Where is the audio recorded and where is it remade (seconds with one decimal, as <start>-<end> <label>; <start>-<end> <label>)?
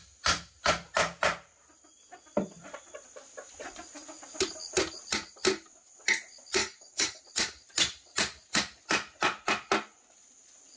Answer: 0.0-6.6 recorded; 6.6-7.2 remade; 7.2-10.8 recorded